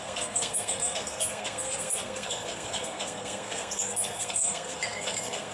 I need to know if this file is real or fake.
fake